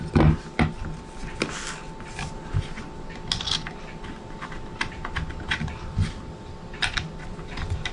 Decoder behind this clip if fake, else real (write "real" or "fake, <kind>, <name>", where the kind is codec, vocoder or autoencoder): real